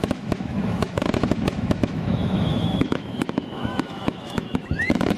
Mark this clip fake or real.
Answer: fake